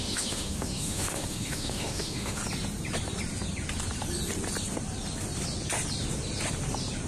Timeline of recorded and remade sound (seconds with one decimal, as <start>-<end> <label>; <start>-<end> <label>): 0.0-2.4 remade; 2.4-7.1 recorded